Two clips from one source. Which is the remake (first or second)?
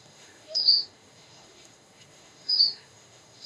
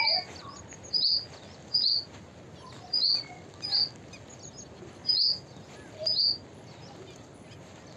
first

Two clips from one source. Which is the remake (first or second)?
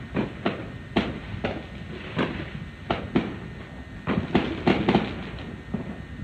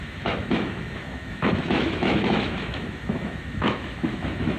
second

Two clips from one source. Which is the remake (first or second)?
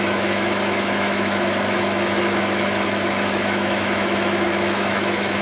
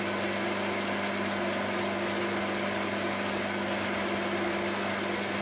first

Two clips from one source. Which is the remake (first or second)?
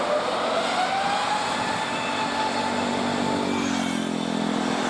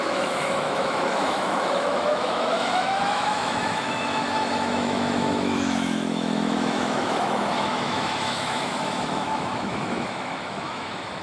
second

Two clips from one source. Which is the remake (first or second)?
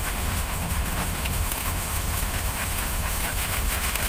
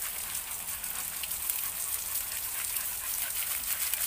first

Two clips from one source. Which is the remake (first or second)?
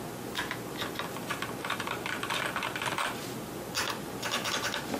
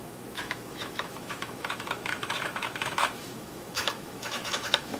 second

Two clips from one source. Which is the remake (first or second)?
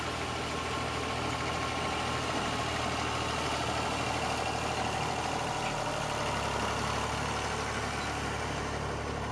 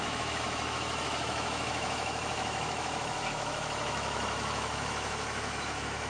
second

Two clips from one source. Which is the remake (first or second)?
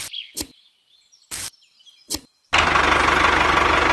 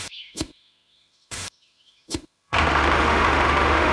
second